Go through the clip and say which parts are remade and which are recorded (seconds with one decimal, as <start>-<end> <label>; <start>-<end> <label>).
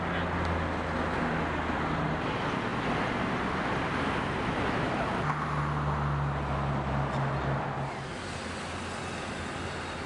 0.0-10.1 recorded